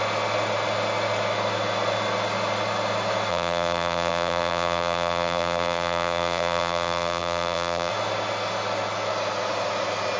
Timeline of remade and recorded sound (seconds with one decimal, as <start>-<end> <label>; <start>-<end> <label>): 0.0-3.3 recorded; 3.3-7.9 remade; 7.9-10.2 recorded